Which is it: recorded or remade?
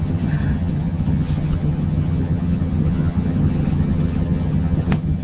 remade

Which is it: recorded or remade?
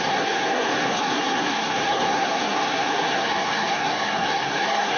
remade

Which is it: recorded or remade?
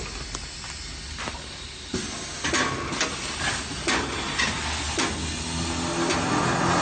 recorded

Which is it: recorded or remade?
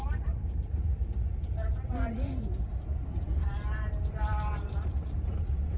remade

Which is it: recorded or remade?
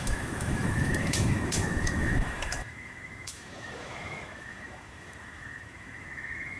remade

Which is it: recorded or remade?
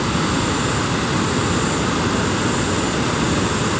recorded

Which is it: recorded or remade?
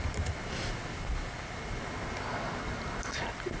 recorded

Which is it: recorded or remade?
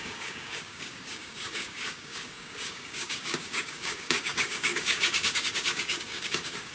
remade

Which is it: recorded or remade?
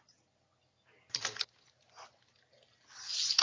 recorded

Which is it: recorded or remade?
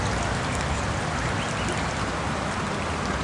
recorded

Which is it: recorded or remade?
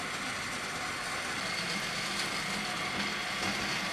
recorded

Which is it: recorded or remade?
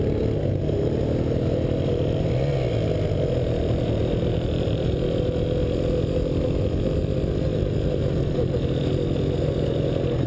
recorded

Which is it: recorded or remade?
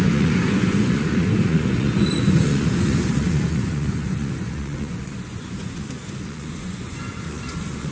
remade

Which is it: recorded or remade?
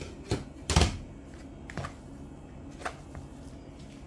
recorded